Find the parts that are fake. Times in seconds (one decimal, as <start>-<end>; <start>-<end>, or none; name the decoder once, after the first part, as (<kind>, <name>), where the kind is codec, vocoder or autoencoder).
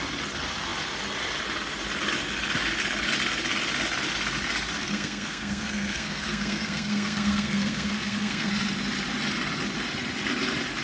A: 4.8-8.5 (codec, SNAC)